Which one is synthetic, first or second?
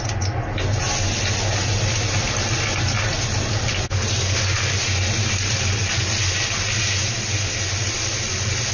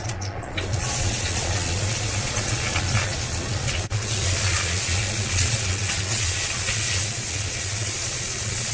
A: second